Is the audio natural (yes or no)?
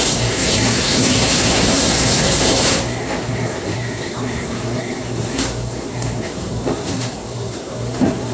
no